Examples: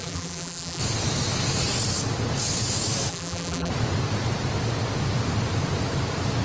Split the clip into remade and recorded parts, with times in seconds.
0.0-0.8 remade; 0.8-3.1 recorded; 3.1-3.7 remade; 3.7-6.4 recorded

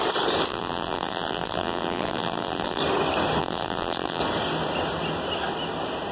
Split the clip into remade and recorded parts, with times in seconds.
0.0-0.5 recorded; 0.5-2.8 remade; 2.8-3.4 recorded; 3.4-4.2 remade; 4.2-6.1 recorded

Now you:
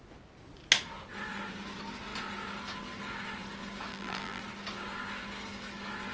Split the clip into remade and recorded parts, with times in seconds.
0.0-3.9 recorded; 3.9-4.4 remade; 4.4-6.1 recorded

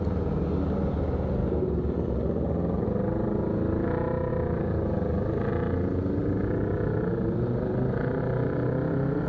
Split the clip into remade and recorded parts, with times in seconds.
0.0-9.3 recorded

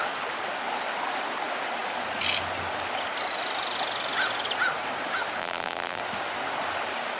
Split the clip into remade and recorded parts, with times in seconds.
0.0-5.4 recorded; 5.4-6.0 remade; 6.0-7.2 recorded

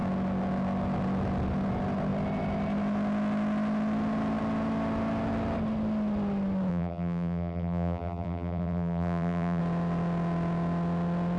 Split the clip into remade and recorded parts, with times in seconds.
0.0-6.7 recorded; 6.7-9.6 remade; 9.6-11.4 recorded